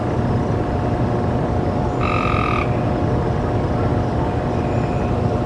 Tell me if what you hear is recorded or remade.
recorded